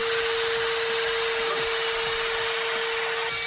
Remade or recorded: recorded